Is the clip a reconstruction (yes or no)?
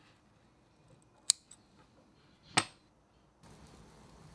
no